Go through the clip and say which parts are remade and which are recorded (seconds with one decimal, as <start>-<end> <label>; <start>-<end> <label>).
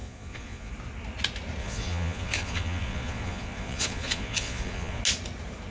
0.0-0.7 remade; 0.7-1.6 recorded; 1.6-5.0 remade; 5.0-5.7 recorded